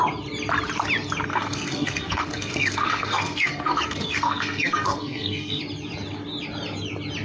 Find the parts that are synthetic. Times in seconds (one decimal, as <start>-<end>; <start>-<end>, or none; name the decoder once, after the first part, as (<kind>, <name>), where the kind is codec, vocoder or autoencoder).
1.3-5.6 (codec, SNAC)

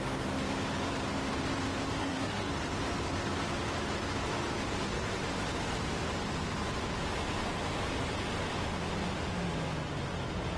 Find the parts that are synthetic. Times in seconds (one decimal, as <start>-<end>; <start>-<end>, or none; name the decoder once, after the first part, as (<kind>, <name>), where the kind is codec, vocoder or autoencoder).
2.0-2.5 (codec, SNAC)

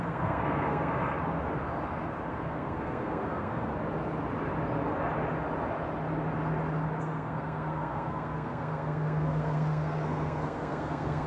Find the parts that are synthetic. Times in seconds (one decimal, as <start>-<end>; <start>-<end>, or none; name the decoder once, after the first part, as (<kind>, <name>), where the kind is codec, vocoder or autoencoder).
0.0-1.1 (codec, SNAC); 2.3-3.7; 7.0-11.3

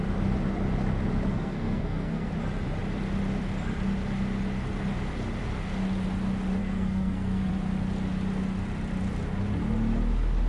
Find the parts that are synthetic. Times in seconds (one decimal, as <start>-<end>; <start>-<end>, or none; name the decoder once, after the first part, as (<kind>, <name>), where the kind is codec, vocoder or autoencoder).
1.3-2.3 (codec, SNAC); 6.6-7.5